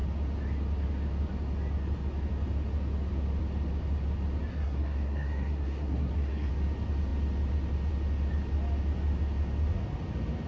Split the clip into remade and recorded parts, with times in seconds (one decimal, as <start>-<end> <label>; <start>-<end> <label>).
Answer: 0.0-4.5 recorded; 4.5-6.5 remade; 6.5-10.5 recorded